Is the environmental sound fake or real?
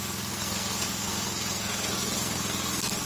fake